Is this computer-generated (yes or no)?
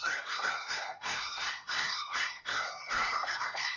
yes